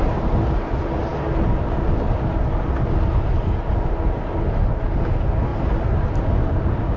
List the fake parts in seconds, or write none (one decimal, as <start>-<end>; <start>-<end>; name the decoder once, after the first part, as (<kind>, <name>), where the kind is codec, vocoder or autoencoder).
none